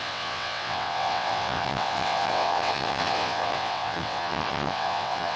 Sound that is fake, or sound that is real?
fake